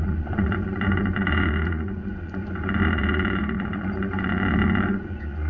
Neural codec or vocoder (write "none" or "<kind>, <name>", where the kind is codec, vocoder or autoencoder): vocoder, Vocos